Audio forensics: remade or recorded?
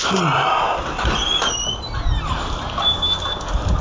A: recorded